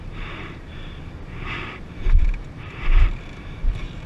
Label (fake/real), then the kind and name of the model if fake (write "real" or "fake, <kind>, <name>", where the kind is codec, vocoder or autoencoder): fake, vocoder, BigVGAN v2